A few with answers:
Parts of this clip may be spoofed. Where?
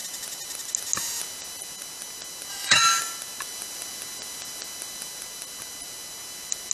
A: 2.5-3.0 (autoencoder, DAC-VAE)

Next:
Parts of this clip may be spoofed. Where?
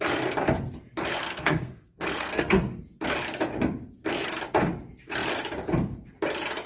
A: 1.2-2.7 (codec, SNAC)